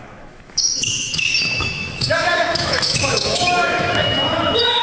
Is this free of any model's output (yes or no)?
no